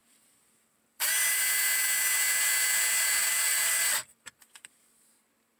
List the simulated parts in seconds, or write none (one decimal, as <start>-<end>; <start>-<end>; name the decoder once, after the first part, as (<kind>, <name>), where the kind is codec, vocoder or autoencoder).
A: 0.0-1.4 (vocoder, BigVGAN v2); 3.2-4.4